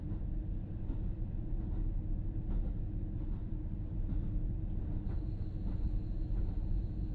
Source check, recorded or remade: recorded